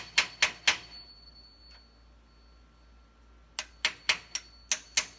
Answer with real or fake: real